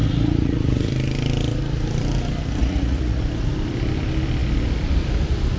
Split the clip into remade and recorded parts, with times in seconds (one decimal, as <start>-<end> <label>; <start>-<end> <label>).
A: 0.0-0.9 remade; 0.9-2.6 recorded; 2.6-3.2 remade; 3.2-5.6 recorded